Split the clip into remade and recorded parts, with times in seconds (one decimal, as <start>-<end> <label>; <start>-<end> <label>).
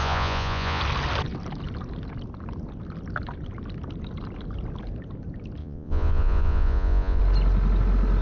0.0-0.8 remade; 0.8-5.6 recorded; 5.6-7.2 remade; 7.2-8.2 recorded